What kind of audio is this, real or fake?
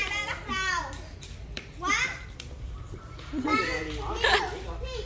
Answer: fake